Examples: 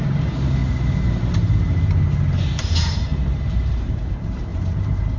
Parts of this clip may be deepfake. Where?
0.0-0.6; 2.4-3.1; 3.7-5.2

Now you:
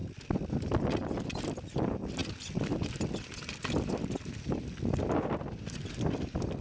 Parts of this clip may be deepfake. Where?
none

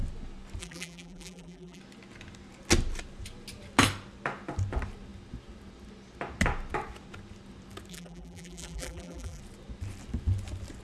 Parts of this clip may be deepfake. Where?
0.6-1.8; 7.9-9.4

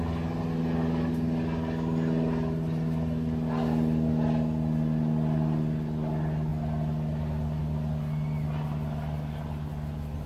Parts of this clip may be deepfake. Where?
none

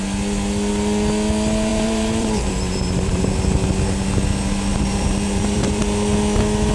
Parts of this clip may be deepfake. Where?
1.7-3.2; 4.7-5.8

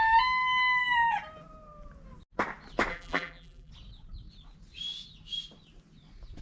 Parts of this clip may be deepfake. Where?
2.9-3.7

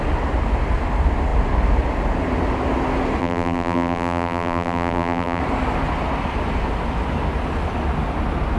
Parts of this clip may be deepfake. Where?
3.2-5.4